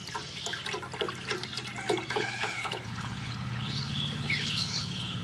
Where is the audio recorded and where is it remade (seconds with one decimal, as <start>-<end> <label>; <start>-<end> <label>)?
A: 0.0-2.1 recorded; 2.1-5.2 remade